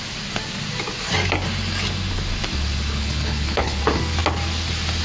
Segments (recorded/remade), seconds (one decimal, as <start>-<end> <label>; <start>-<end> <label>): 0.0-2.9 recorded; 2.9-3.8 remade; 3.8-5.0 recorded